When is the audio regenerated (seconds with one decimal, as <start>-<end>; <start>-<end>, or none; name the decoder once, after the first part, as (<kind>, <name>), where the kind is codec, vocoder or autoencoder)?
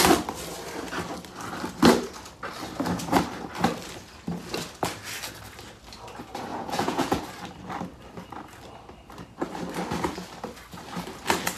6.5-7.2 (vocoder, Vocos)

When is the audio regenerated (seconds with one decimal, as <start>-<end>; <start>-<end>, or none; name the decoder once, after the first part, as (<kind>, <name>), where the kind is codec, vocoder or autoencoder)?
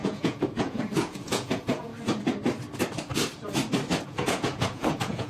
0.0-1.9 (vocoder, Vocos); 4.0-5.3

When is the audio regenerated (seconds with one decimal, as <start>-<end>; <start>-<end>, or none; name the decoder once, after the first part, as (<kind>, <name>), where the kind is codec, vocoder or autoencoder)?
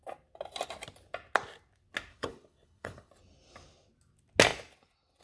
2.1-3.1 (codec, HILCodec)